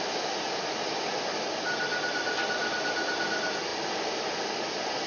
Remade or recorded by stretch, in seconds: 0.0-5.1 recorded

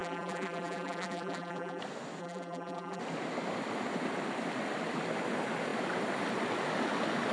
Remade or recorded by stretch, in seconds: 0.0-1.8 remade; 1.8-2.2 recorded; 2.2-3.0 remade; 3.0-7.3 recorded

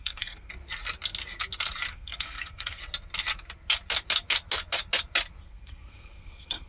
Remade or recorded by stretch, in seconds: 0.0-0.5 remade; 0.5-1.9 recorded; 1.9-2.8 remade; 2.8-5.4 recorded; 5.4-6.7 remade

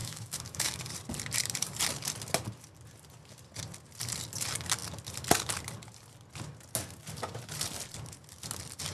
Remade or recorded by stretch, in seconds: 0.0-0.8 remade; 0.8-8.9 recorded